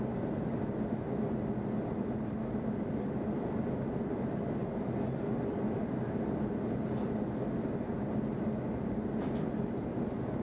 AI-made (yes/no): no